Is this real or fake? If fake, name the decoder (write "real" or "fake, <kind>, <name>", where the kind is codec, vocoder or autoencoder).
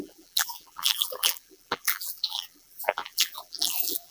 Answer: fake, vocoder, BigVGAN v2